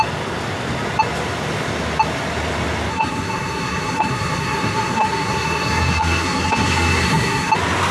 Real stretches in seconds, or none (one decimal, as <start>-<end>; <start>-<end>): 0.0-2.9; 7.5-7.9